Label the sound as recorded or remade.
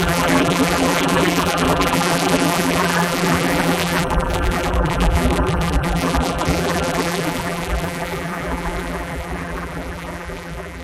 remade